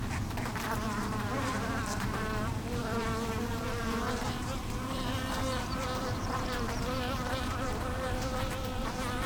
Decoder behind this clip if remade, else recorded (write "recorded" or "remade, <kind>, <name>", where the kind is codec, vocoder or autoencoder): remade, vocoder, BigVGAN v2